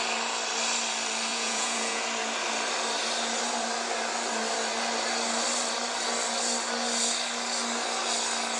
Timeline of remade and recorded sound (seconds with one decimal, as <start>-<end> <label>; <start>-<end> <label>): 0.0-1.3 recorded; 1.3-2.0 remade; 2.0-8.6 recorded